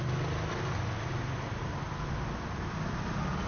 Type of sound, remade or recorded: recorded